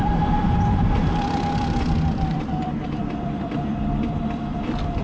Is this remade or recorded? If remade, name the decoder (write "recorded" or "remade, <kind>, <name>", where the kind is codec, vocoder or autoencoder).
remade, vocoder, BigVGAN v2